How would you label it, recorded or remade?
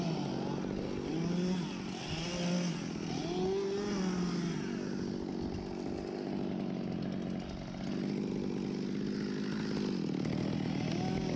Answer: recorded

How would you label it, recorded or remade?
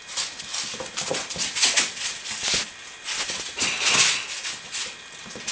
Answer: recorded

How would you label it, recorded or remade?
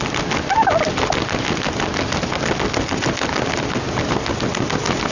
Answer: recorded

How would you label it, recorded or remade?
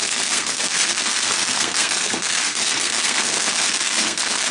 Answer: remade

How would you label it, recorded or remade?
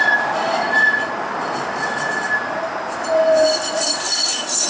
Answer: recorded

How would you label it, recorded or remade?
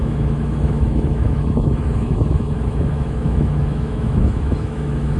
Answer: remade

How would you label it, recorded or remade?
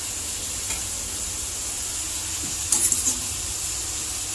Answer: recorded